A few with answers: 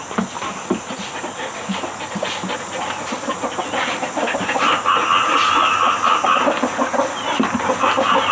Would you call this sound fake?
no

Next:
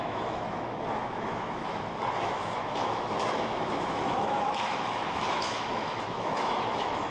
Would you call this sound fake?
yes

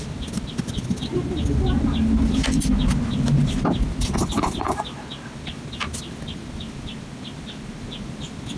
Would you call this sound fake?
no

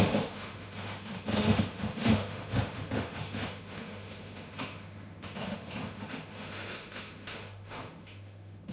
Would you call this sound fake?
yes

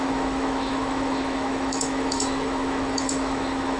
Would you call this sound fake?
yes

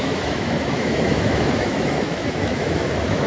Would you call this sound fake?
yes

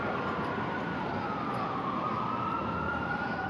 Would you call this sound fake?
no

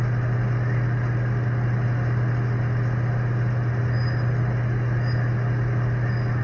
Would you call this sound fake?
no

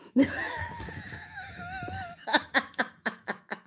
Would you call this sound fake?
yes